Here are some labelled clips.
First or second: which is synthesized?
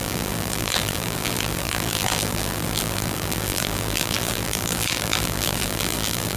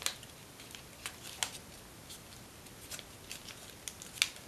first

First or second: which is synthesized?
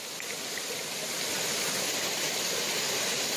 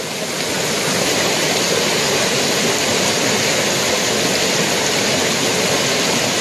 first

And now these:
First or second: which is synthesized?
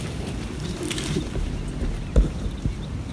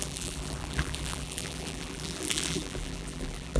second